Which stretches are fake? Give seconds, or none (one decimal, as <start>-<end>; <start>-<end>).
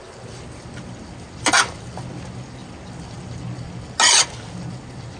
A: none